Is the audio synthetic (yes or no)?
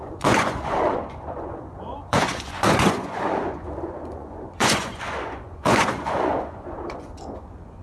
yes